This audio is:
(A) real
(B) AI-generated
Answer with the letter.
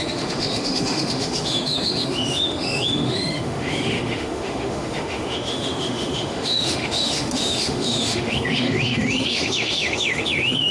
B